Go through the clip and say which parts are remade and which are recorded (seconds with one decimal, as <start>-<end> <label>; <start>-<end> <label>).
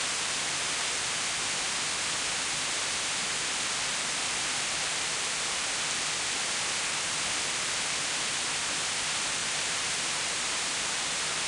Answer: 0.0-9.4 recorded; 9.4-11.5 remade